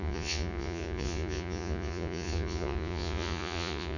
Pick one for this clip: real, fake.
fake